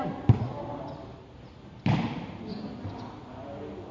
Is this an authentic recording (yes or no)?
yes